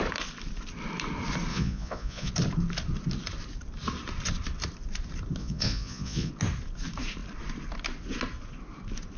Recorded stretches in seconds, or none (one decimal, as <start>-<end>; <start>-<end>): 0.0-1.5; 2.3-5.4; 6.3-9.2